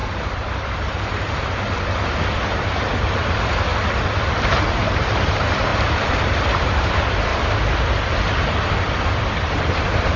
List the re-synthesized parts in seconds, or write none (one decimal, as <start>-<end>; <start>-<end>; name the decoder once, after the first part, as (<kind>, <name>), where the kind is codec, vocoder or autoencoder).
0.0-3.7 (vocoder, BigVGAN v2); 4.5-7.3; 9.2-10.2